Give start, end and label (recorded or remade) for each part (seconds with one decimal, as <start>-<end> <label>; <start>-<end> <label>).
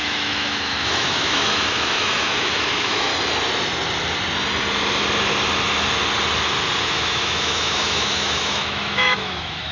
0.0-3.1 remade; 3.1-6.8 recorded; 6.8-9.7 remade